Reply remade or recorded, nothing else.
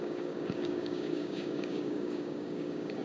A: remade